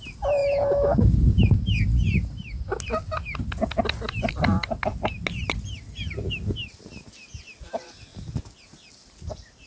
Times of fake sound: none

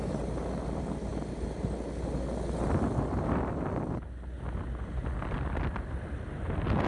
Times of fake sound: none